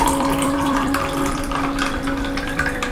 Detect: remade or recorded remade